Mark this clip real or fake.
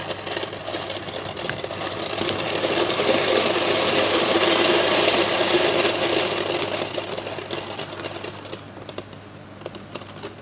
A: real